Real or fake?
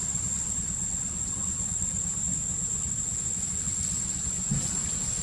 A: real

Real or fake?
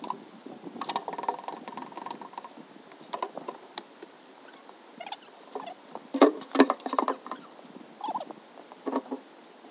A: real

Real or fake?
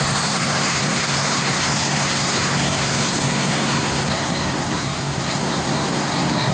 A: fake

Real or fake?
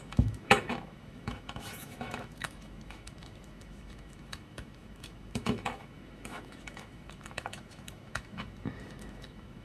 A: fake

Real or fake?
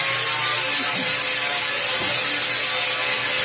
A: real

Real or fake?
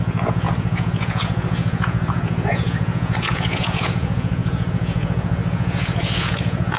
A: fake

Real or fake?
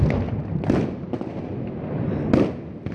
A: real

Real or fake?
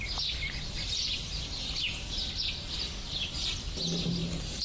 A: real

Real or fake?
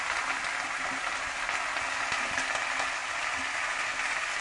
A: real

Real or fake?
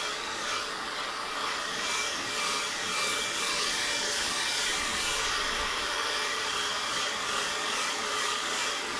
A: fake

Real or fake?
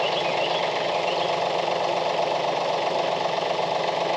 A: real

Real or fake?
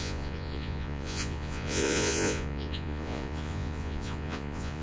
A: fake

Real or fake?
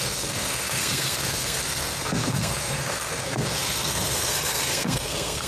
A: fake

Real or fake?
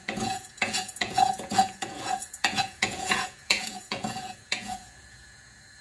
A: fake